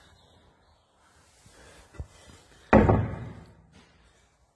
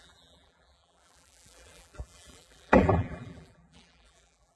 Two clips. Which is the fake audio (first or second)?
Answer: second